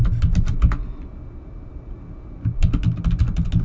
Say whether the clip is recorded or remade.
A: recorded